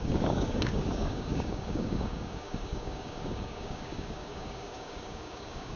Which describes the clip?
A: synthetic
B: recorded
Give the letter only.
A